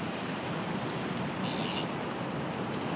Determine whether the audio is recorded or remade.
recorded